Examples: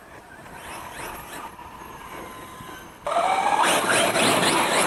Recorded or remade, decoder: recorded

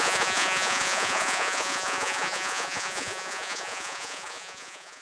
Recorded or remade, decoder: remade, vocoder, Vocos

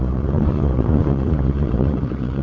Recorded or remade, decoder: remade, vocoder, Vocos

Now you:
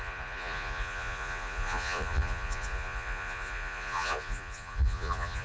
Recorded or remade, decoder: remade, vocoder, Vocos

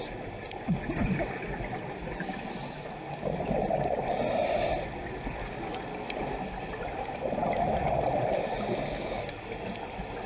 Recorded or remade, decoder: recorded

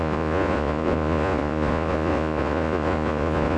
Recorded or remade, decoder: remade, vocoder, Vocos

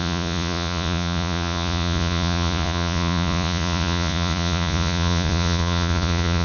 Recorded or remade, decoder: remade, vocoder, Vocos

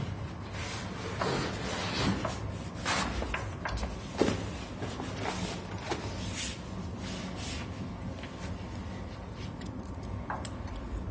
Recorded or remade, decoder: recorded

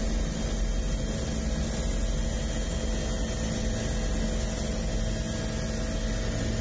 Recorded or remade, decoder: recorded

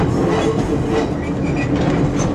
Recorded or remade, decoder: recorded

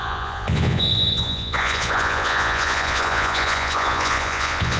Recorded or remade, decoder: remade, vocoder, Vocos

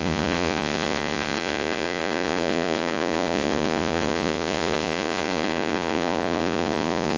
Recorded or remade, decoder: remade, vocoder, Vocos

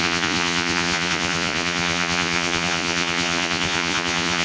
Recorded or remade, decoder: remade, vocoder, Vocos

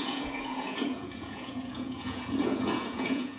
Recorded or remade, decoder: remade, vocoder, Vocos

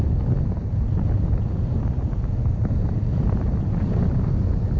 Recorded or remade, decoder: recorded